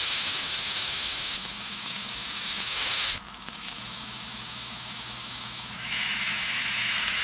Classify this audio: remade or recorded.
remade